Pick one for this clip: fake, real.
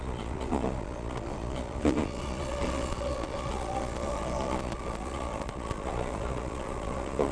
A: fake